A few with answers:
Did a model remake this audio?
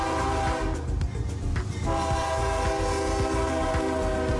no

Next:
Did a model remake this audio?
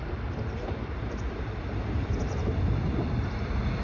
yes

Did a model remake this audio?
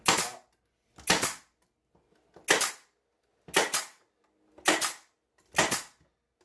no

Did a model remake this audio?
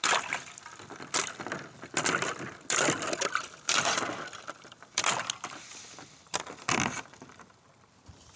no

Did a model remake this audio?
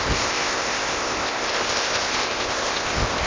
yes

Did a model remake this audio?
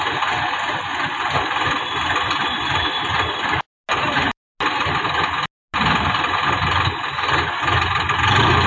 no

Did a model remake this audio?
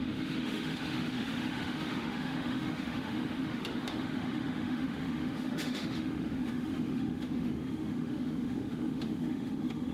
yes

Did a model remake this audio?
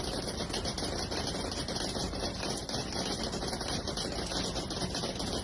no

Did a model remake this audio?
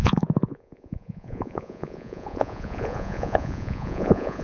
yes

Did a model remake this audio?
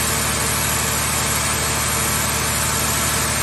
no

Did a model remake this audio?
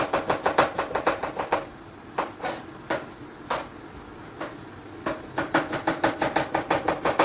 no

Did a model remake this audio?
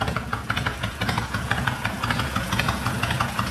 yes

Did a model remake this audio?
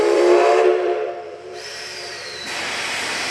yes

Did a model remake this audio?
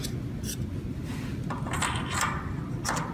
no